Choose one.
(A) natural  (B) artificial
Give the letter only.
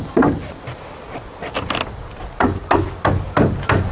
A